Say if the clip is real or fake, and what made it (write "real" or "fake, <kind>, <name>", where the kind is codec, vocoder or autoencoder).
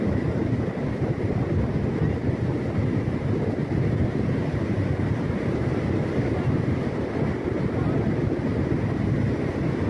real